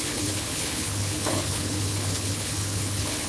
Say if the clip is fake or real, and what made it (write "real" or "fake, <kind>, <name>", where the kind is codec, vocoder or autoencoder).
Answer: fake, codec, HILCodec